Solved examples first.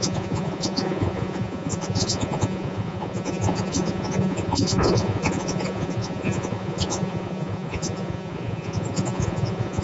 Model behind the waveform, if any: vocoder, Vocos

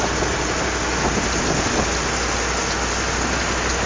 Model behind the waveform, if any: none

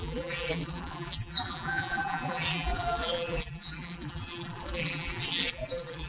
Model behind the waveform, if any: vocoder, BigVGAN v2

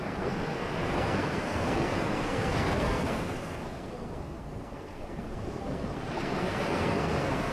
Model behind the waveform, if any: codec, SNAC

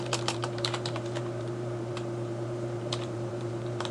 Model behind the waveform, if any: vocoder, BigVGAN v2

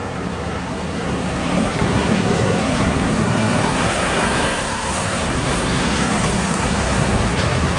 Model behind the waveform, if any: codec, SNAC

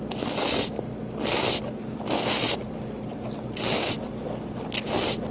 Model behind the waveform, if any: none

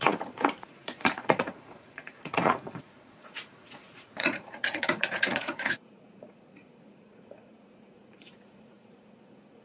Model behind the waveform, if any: vocoder, Vocos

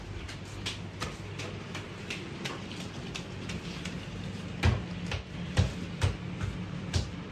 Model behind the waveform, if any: none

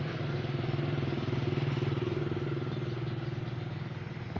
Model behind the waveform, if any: none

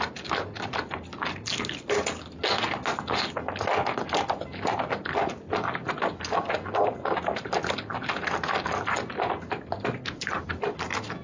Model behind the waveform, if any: none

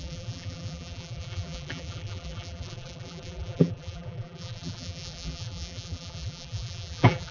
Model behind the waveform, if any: vocoder, BigVGAN v2